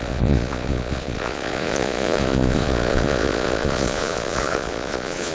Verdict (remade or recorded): remade